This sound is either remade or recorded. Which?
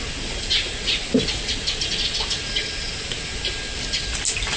recorded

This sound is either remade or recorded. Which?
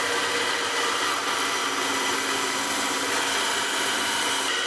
recorded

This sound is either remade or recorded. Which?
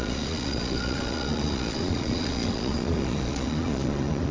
remade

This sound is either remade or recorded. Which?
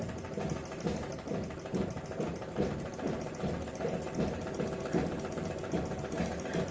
recorded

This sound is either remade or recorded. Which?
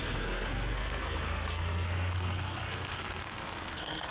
remade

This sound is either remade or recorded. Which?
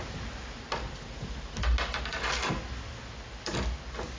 recorded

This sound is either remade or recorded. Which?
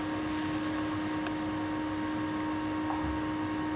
recorded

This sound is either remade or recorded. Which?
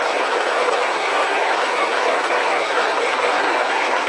remade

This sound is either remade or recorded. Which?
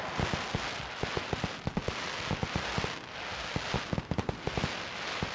recorded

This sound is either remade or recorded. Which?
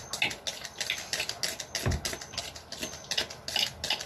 recorded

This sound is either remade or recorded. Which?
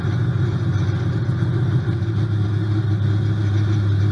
recorded